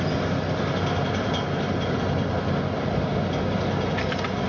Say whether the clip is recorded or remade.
recorded